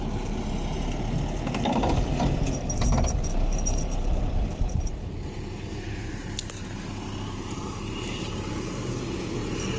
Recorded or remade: recorded